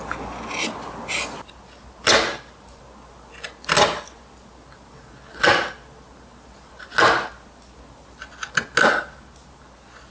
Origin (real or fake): real